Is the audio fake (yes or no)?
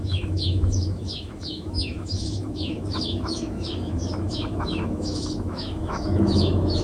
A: yes